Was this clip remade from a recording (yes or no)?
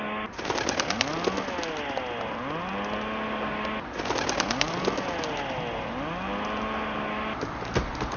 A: no